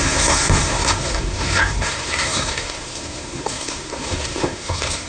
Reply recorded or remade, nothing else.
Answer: remade